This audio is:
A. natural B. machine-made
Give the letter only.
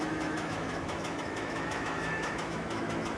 B